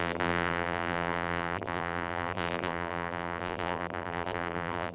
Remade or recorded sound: remade